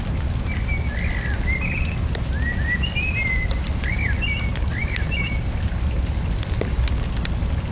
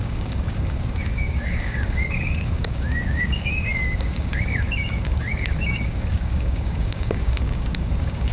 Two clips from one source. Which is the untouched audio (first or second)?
first